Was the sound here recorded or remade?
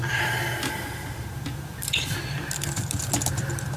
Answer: remade